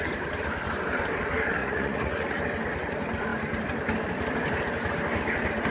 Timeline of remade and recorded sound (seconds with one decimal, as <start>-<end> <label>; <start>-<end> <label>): 0.0-1.6 recorded; 1.6-2.4 remade; 2.4-5.7 recorded